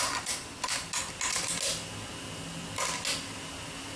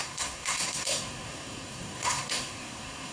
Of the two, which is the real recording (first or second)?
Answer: first